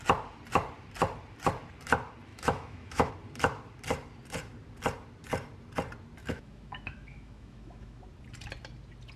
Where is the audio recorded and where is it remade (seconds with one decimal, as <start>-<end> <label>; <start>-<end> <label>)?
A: 0.0-2.3 recorded; 2.3-3.1 remade; 3.1-6.2 recorded; 6.2-8.0 remade; 8.0-9.2 recorded